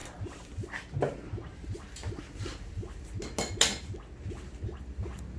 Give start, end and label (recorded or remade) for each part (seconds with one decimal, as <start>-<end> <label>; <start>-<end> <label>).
0.0-5.4 recorded